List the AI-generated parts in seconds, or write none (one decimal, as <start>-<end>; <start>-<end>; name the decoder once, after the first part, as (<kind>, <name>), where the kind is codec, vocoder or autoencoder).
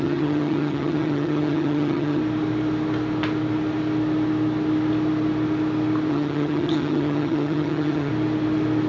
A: 0.0-2.2 (vocoder, HiFi-GAN); 6.1-8.1